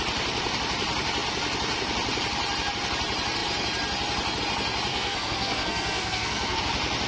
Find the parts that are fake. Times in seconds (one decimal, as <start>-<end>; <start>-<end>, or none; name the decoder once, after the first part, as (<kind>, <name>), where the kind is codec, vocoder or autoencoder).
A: 4.9-6.6 (codec, SNAC)